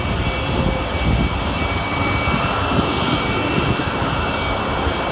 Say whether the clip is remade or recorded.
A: recorded